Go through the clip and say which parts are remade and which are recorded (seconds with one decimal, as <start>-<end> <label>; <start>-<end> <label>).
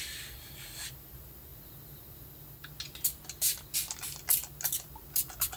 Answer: 0.0-5.6 recorded